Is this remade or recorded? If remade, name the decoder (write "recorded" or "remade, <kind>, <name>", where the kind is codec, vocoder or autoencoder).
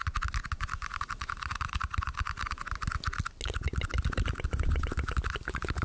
recorded